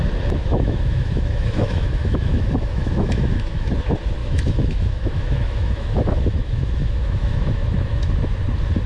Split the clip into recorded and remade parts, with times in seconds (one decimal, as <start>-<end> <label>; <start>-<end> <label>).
0.0-0.4 recorded; 0.4-3.7 remade; 3.7-4.2 recorded; 4.2-8.1 remade; 8.1-8.9 recorded